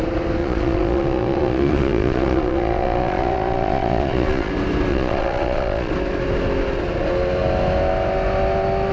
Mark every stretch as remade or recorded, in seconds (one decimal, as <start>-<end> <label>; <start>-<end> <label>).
0.0-0.4 recorded; 0.4-4.5 remade; 4.5-4.9 recorded; 4.9-5.9 remade; 5.9-8.9 recorded